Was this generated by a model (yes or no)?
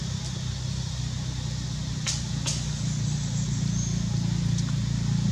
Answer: no